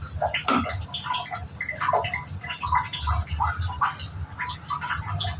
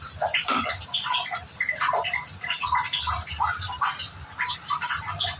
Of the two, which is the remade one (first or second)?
second